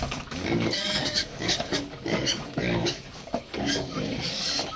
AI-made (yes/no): yes